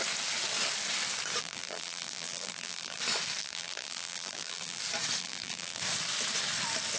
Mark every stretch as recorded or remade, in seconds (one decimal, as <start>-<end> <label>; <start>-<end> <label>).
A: 0.0-1.4 recorded; 1.4-3.0 remade; 3.0-3.4 recorded; 3.4-4.8 remade; 4.8-5.2 recorded; 5.2-5.8 remade; 5.8-7.0 recorded